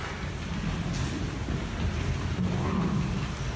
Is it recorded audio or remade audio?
recorded